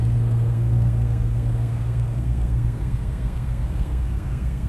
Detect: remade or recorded remade